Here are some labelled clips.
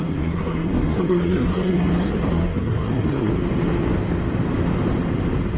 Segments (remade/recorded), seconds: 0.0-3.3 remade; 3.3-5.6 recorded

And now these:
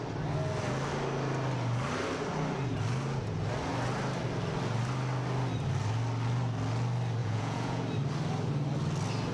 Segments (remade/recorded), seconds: 0.0-7.2 recorded; 7.2-7.8 remade; 7.8-9.3 recorded

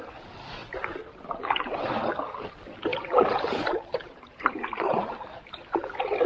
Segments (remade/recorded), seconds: 0.0-2.9 recorded; 2.9-5.2 remade; 5.2-6.3 recorded

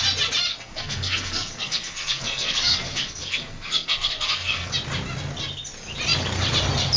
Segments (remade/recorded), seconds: 0.0-0.5 recorded; 0.5-4.7 remade; 4.7-7.0 recorded

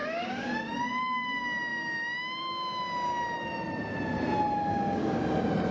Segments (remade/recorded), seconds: 0.0-0.8 remade; 0.8-4.7 recorded; 4.7-5.2 remade; 5.2-5.7 recorded

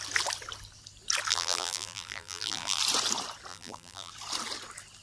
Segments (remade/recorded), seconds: 0.0-1.3 recorded; 1.3-2.8 remade; 2.8-3.5 recorded; 3.5-4.1 remade; 4.1-5.0 recorded

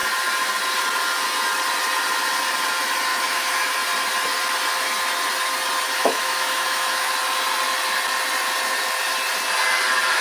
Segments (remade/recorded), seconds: 0.0-3.1 recorded; 3.1-3.7 remade; 3.7-6.0 recorded; 6.0-7.1 remade; 7.1-10.2 recorded